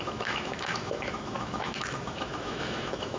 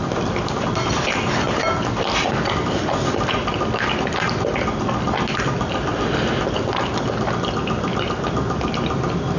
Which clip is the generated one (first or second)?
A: first